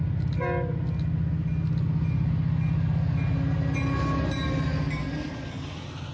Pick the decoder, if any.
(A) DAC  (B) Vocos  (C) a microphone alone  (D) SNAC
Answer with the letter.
C